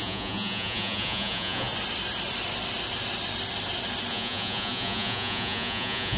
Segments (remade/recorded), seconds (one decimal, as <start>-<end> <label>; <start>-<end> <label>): 0.0-1.7 remade; 1.7-4.1 recorded; 4.1-6.2 remade